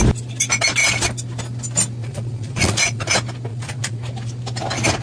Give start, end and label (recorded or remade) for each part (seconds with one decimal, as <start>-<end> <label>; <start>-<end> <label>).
0.0-2.0 recorded; 2.0-3.1 remade; 3.1-3.5 recorded; 3.5-4.0 remade; 4.0-5.0 recorded